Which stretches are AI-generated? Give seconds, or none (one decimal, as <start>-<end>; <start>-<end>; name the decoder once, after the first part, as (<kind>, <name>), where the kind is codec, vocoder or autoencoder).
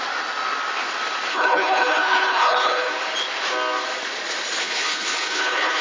1.3-2.9 (codec, HILCodec); 4.6-5.8